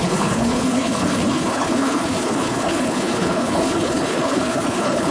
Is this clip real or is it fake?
fake